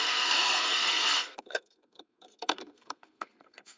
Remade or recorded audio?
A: remade